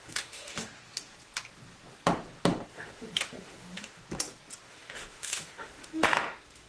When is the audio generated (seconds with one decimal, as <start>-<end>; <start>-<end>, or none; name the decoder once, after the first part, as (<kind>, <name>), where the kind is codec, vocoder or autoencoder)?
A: 0.0-0.7 (autoencoder, DAC-VAE); 2.7-4.0; 4.7-6.7